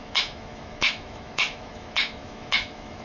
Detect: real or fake fake